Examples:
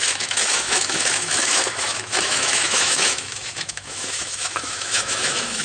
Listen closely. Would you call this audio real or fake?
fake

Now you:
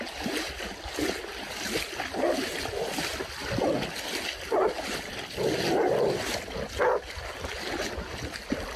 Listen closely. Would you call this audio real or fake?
real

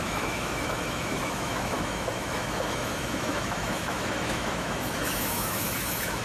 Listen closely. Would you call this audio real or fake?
fake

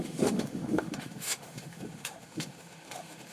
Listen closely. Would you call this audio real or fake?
fake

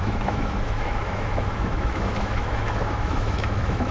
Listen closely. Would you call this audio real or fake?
fake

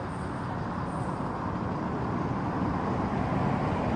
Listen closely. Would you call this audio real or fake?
real